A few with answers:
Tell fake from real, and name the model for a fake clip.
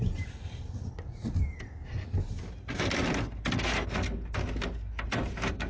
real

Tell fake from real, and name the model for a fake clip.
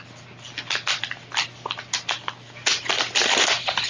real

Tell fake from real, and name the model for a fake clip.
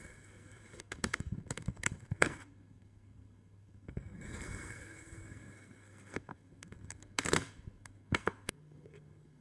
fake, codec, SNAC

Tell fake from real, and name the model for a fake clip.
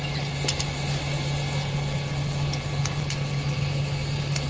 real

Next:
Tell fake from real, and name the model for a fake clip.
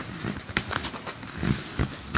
real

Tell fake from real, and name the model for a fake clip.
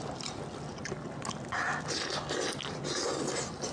real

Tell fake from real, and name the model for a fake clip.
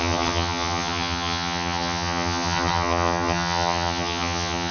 fake, vocoder, HiFi-GAN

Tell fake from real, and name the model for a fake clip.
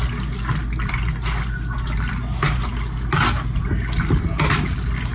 real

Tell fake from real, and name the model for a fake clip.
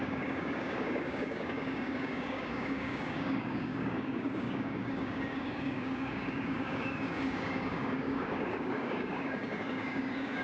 fake, codec, DAC